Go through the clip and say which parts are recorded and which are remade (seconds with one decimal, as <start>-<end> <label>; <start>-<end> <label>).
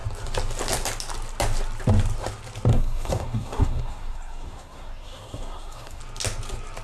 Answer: 0.0-2.7 recorded; 2.7-6.0 remade; 6.0-6.8 recorded